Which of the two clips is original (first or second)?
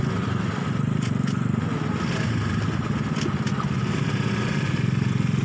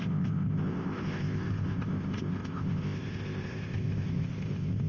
first